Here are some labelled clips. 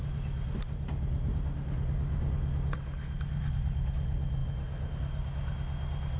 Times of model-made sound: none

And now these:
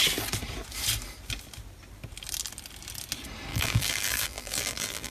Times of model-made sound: 3.5-5.1 (vocoder, BigVGAN v2)